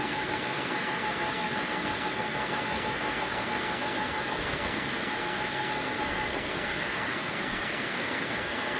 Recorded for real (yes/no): no